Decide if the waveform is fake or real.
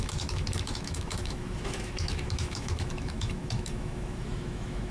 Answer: fake